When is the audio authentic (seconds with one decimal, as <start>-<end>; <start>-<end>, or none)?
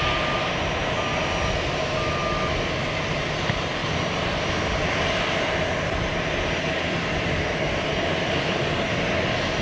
0.0-9.6